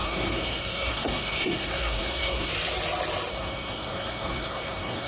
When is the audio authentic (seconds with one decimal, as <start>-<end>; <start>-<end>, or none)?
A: 2.5-3.3